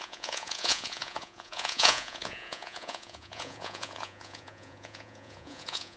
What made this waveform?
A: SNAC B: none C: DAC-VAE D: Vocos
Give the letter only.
D